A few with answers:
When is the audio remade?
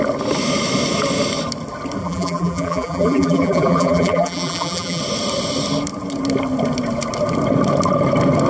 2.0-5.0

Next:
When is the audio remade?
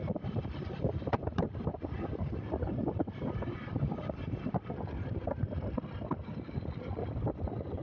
0.0-2.8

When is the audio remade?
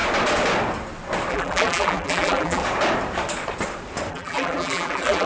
1.3-2.6; 4.1-5.3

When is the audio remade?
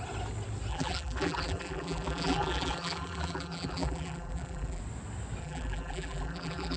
0.7-4.8; 5.4-6.8